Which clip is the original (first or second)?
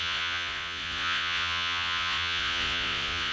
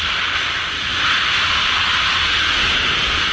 second